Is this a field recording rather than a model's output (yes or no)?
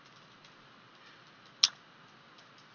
yes